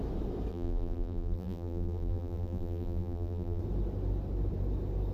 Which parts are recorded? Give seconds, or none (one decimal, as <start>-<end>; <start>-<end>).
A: 0.0-0.5; 3.6-5.1